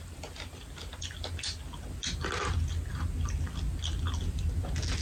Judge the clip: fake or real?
real